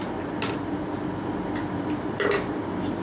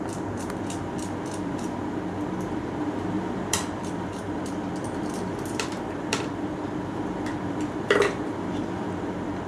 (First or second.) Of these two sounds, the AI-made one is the second